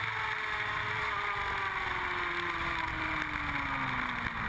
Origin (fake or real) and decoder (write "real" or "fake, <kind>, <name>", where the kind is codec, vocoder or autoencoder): real